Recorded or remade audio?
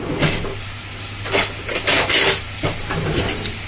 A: recorded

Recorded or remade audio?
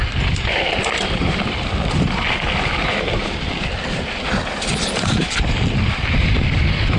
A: remade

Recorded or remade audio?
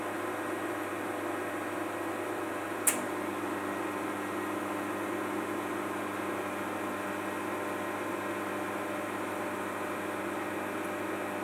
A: recorded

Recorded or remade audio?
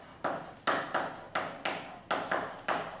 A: recorded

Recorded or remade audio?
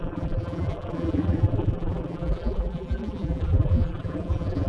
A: remade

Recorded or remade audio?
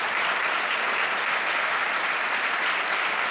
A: remade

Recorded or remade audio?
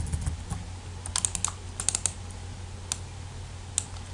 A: recorded